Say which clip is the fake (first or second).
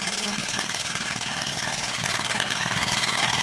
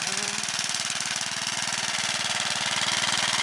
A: first